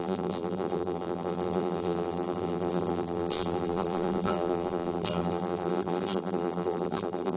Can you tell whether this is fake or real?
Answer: fake